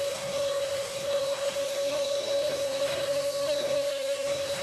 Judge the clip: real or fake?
fake